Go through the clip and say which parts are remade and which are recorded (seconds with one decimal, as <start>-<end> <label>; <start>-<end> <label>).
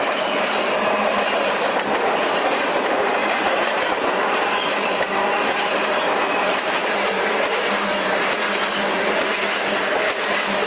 0.0-3.2 recorded; 3.2-4.2 remade; 4.2-10.7 recorded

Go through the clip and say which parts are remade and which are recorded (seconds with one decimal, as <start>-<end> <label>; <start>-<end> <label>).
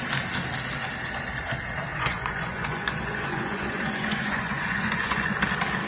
0.0-1.9 recorded; 1.9-5.4 remade; 5.4-5.9 recorded